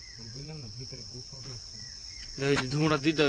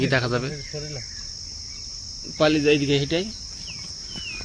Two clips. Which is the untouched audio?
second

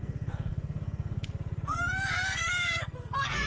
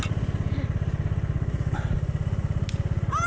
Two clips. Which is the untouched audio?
second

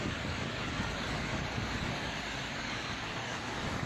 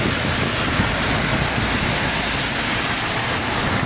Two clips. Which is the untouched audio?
second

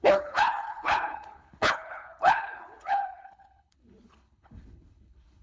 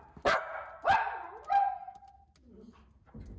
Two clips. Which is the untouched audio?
second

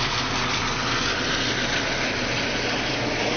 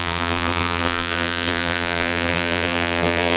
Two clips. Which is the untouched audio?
first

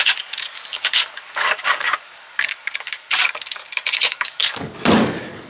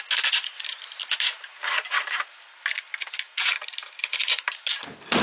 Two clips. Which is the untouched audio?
second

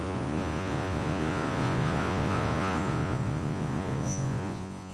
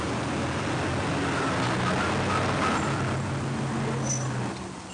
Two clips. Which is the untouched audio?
second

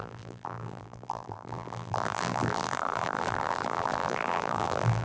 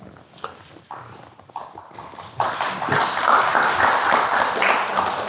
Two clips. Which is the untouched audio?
second